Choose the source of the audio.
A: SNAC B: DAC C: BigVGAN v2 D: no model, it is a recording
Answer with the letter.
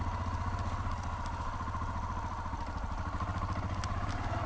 D